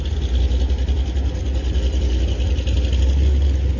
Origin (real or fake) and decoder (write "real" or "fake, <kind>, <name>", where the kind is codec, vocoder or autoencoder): real